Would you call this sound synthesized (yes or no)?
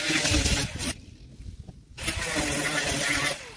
no